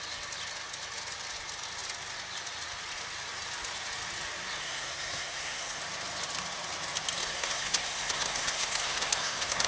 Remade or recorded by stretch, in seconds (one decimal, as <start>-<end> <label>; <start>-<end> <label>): 0.0-4.6 recorded; 4.6-5.8 remade; 5.8-7.2 recorded; 7.2-9.7 remade